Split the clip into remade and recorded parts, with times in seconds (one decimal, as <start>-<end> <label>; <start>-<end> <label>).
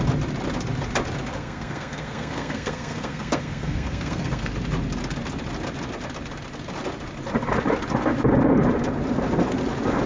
0.0-1.3 recorded; 1.3-4.5 remade; 4.5-10.1 recorded